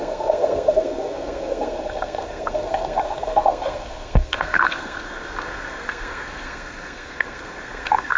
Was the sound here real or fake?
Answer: fake